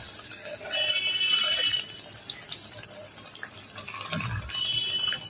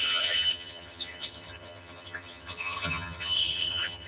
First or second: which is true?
first